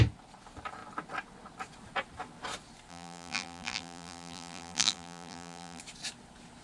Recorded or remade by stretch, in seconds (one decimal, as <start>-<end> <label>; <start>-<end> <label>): 0.0-2.9 recorded; 2.9-5.8 remade; 5.8-6.6 recorded